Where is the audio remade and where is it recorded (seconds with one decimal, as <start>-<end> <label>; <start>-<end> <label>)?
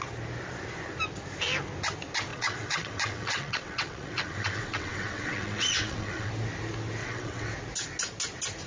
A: 0.0-2.3 recorded; 2.3-6.3 remade; 6.3-7.0 recorded; 7.0-7.5 remade; 7.5-8.7 recorded